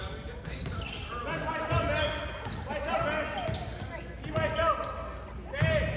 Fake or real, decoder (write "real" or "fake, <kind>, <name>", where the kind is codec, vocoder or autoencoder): real